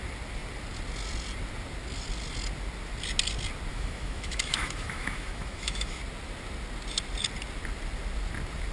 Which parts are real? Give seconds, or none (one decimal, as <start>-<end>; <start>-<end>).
0.0-3.7; 6.0-8.7